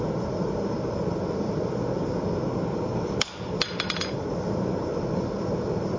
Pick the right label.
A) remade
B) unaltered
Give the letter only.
A